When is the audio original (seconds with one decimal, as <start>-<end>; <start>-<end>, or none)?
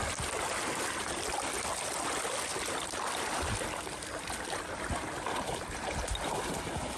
0.0-7.0